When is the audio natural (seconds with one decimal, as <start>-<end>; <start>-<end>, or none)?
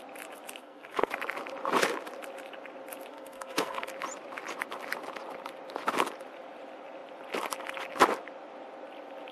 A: 0.0-0.6; 1.1-3.1; 3.9-9.3